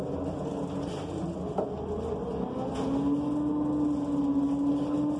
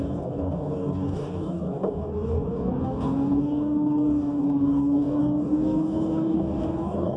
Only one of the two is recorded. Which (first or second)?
first